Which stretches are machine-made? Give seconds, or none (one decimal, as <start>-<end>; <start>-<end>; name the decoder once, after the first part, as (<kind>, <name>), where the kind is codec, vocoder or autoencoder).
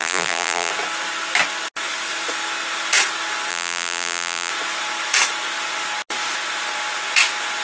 0.0-0.7 (vocoder, BigVGAN v2); 3.5-4.5